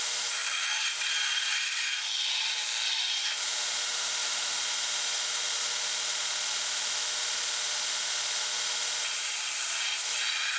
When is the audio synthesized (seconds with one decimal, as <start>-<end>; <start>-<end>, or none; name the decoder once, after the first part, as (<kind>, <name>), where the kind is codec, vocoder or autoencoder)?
4.2-5.8 (vocoder, BigVGAN v2); 9.2-9.9